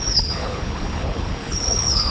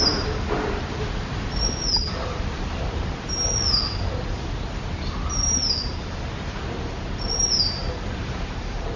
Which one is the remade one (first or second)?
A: first